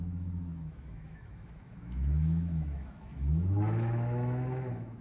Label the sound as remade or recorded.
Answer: remade